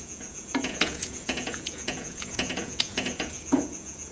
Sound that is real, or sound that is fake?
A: fake